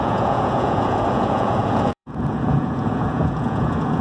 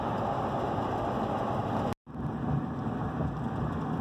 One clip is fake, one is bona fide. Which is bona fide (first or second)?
second